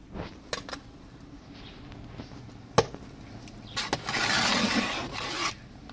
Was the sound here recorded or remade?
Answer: recorded